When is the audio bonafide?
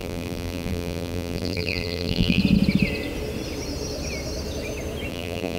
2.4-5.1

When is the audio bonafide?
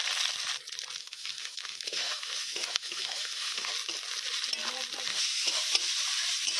0.0-1.0; 3.7-5.1; 5.6-6.6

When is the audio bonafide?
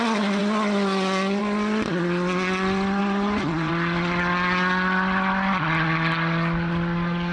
0.0-3.0; 3.7-7.3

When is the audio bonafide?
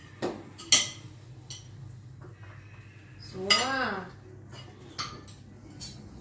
0.6-6.2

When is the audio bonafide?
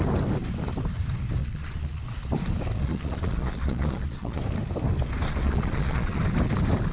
0.0-1.4; 2.0-2.8; 4.4-5.4; 6.2-6.9